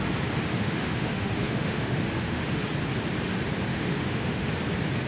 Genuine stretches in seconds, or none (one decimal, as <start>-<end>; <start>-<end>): 0.0-0.5; 2.6-3.7; 4.5-5.1